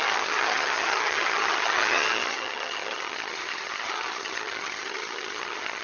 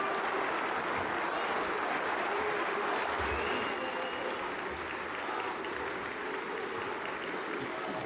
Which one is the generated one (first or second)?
first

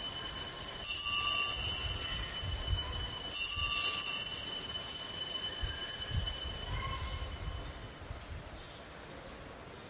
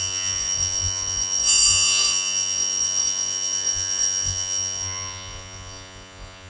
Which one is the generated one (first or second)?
second